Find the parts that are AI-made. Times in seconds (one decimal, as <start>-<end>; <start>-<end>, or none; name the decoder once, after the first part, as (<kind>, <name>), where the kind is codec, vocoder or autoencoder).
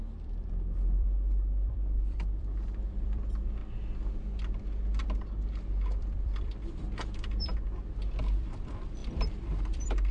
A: 0.0-3.6 (vocoder, BigVGAN v2); 6.0-7.5; 8.2-10.1